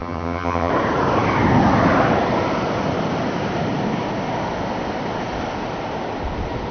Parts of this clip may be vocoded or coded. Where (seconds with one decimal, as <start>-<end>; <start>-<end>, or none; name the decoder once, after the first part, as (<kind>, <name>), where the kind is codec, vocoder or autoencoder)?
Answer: 0.0-0.7 (vocoder, HiFi-GAN)